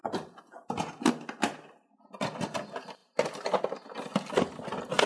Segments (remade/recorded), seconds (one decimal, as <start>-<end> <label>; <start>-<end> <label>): 0.0-5.1 recorded